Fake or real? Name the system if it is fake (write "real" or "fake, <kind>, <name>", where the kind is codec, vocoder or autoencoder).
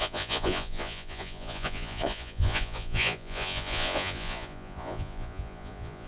fake, vocoder, Vocos